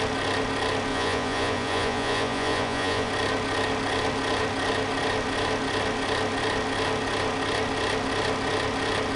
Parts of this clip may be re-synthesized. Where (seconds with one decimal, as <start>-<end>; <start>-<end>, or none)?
0.9-3.1